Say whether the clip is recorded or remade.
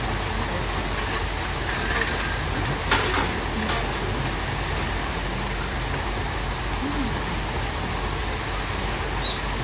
recorded